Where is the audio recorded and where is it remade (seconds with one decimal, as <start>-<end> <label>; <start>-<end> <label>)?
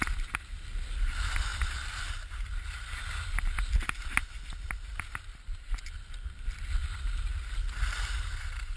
0.0-8.8 recorded